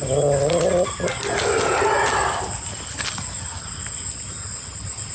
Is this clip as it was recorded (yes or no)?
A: yes